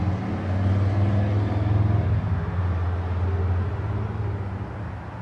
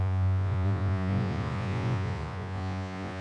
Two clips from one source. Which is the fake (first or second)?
second